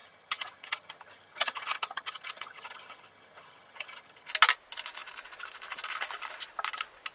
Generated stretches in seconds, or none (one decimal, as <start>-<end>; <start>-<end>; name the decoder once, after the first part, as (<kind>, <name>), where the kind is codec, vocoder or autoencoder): 0.0-4.3 (vocoder, HiFi-GAN)